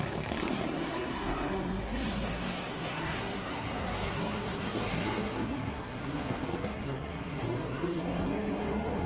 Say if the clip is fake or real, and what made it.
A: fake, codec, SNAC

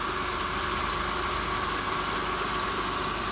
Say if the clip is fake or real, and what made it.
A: real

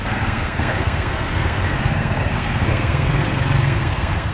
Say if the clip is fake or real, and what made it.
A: fake, codec, SNAC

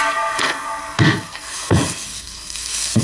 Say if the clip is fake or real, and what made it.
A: fake, codec, SNAC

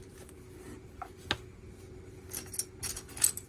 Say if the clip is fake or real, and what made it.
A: real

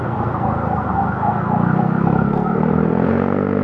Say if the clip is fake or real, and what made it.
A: fake, codec, SNAC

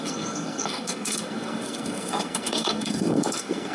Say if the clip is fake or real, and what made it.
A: fake, codec, SNAC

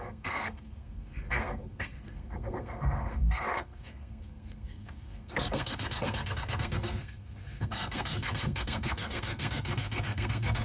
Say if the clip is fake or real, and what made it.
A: fake, codec, SNAC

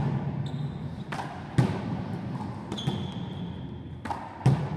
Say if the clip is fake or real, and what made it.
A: real